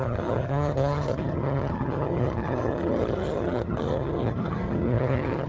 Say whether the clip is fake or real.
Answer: fake